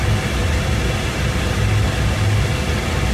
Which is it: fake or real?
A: real